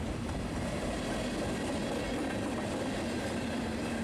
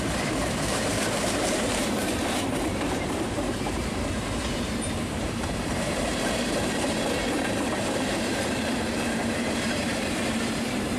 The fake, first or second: second